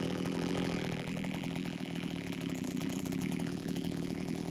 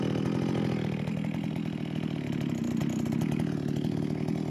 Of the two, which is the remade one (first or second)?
first